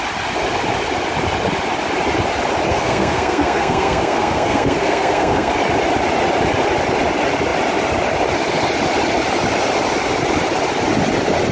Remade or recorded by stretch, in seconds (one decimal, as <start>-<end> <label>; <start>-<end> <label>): 0.0-2.7 recorded; 2.7-5.5 remade; 5.5-11.5 recorded